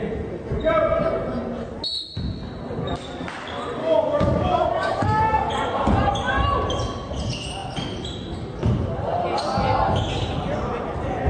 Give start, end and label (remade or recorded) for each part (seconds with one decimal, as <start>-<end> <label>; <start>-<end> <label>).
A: 0.0-3.8 recorded; 3.8-5.5 remade; 5.5-11.3 recorded